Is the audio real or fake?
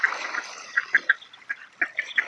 real